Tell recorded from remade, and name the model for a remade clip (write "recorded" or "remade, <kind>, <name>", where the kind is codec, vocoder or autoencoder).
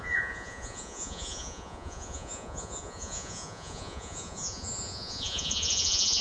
remade, vocoder, Vocos